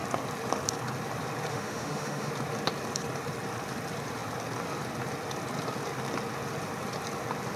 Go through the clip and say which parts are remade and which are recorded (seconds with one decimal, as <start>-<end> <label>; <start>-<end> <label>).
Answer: 0.0-1.5 recorded; 1.5-2.3 remade; 2.3-7.6 recorded